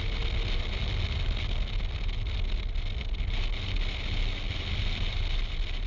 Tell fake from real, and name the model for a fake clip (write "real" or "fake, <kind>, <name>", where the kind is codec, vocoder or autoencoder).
real